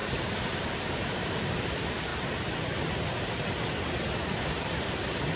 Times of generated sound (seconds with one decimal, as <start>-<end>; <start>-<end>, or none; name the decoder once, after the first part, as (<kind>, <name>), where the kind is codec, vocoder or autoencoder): 0.0-2.1 (vocoder, BigVGAN v2); 4.4-5.4